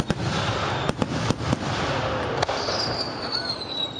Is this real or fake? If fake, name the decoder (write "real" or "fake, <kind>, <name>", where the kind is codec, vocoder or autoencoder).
real